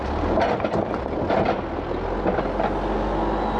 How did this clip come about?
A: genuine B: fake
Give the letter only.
A